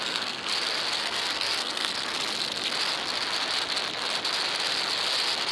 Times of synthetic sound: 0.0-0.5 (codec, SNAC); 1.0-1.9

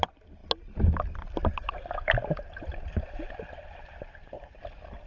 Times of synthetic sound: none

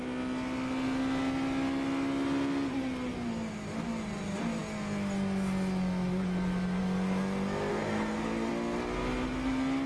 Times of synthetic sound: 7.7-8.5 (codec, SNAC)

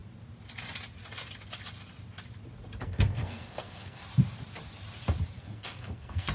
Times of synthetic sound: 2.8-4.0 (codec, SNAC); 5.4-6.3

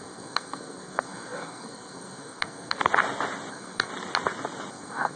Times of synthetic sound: 0.0-2.8 (codec, SNAC); 3.5-3.9; 4.7-5.2